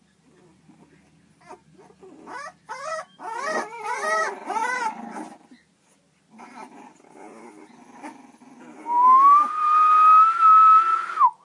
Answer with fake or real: real